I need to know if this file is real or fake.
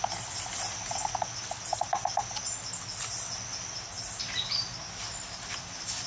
real